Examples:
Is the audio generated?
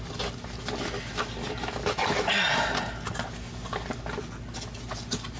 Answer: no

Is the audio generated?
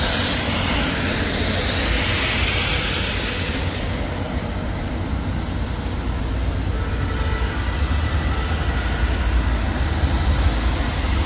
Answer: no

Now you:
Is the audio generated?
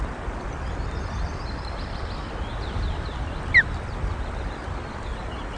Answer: no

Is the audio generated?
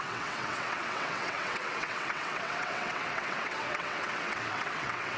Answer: yes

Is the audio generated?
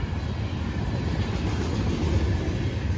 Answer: no